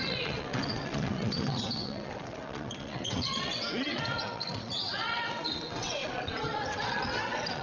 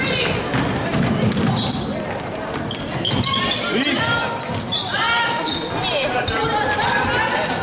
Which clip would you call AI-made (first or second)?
first